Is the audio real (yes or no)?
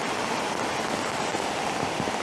yes